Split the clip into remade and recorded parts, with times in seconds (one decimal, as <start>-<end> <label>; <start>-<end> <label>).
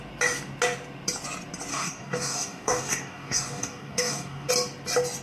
0.0-1.7 recorded; 1.7-4.5 remade; 4.5-5.2 recorded